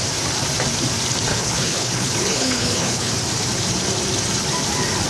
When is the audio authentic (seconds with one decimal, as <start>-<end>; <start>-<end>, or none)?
0.0-1.3; 3.1-5.1